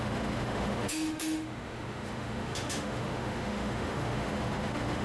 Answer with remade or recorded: remade